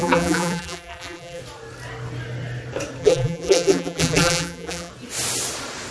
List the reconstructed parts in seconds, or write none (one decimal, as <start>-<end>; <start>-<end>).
0.0-1.4; 3.0-4.9